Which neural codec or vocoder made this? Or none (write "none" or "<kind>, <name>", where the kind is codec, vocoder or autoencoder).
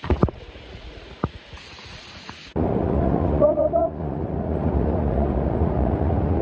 vocoder, Vocos